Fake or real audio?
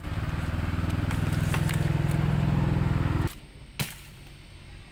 real